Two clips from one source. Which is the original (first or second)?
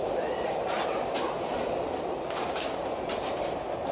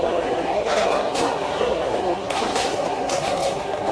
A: first